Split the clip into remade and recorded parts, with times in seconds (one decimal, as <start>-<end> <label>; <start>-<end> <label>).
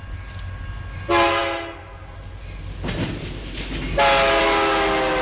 0.0-5.2 recorded